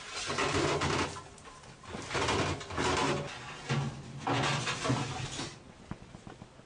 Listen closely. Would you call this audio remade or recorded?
recorded